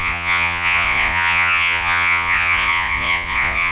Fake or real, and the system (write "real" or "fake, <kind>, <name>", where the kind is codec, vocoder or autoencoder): fake, vocoder, Vocos